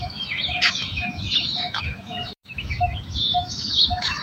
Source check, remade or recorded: remade